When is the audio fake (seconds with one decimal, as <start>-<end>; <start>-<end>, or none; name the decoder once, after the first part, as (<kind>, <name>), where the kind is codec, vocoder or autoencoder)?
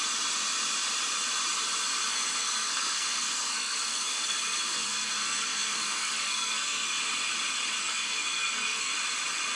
2.1-7.0 (codec, SNAC); 7.8-8.9